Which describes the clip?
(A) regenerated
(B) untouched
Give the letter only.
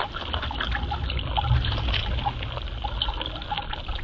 B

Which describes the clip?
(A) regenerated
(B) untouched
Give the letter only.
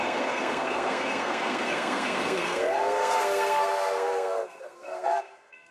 A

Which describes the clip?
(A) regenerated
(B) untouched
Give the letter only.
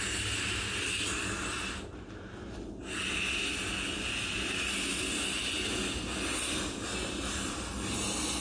B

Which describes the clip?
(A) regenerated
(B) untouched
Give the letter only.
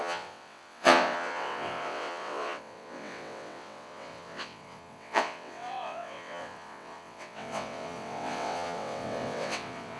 A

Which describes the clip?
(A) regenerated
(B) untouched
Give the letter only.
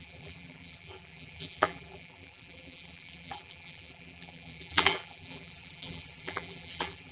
A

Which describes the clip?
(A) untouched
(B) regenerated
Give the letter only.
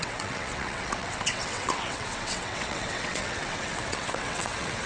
B